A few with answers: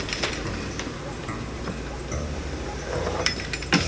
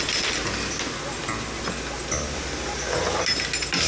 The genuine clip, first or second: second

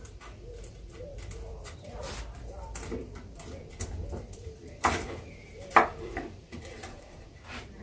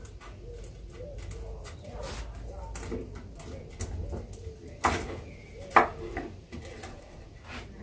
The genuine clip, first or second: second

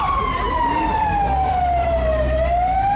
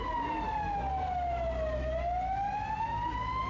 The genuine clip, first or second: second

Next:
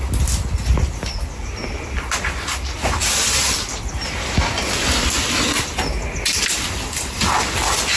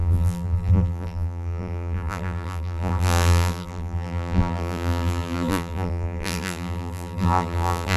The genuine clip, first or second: first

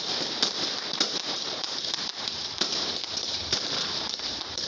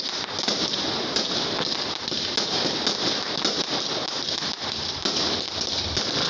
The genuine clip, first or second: second